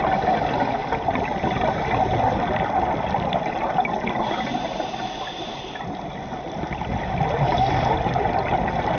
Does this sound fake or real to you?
real